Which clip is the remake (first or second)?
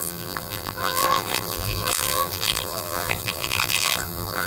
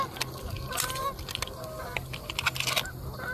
first